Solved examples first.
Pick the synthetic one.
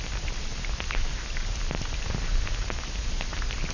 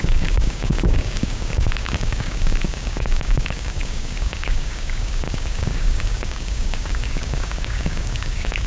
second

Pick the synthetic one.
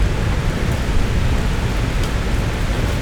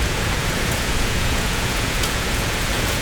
second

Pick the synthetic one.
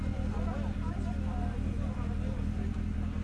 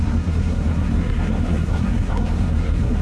second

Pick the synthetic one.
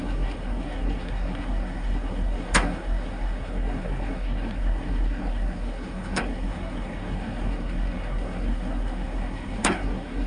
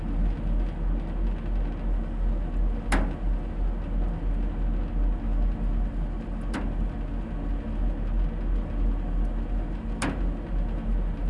first